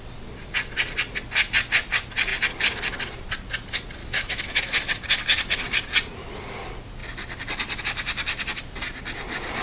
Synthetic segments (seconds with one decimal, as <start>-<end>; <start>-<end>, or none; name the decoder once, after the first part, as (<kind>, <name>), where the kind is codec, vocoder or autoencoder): 4.0-4.8 (autoencoder, DAC-VAE)